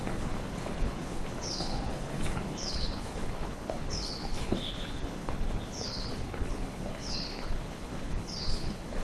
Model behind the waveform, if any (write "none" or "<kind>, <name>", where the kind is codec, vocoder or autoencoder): codec, HILCodec